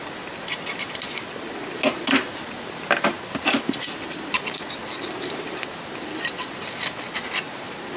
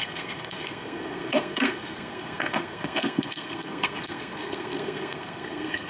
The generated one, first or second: second